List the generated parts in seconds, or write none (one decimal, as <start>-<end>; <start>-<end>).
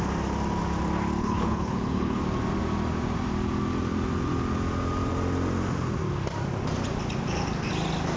1.2-2.2